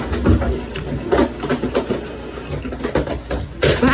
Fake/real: real